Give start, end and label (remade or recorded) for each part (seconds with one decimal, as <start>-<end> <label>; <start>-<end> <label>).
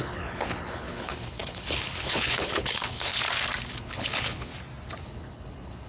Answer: 0.0-3.1 remade; 3.1-3.7 recorded; 3.7-4.5 remade; 4.5-5.0 recorded; 5.0-5.9 remade